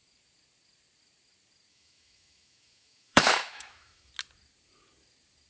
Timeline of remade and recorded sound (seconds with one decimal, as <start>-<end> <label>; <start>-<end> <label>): 0.0-1.7 recorded; 1.7-4.1 remade; 4.1-5.5 recorded